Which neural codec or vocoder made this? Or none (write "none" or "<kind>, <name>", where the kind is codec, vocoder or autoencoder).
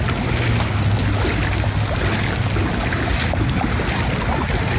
none